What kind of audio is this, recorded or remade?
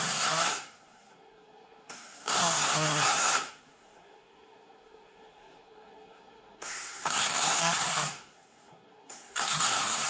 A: remade